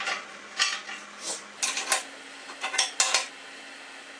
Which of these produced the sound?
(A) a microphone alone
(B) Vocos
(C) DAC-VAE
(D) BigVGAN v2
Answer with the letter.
A